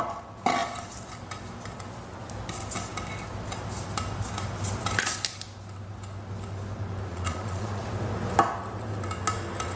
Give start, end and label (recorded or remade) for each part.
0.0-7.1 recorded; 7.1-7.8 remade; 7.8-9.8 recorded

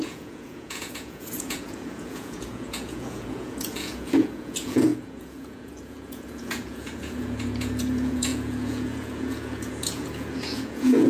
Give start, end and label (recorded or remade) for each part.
0.0-11.1 remade

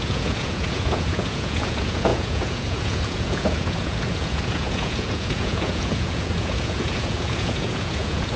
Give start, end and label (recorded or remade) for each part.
0.0-8.4 remade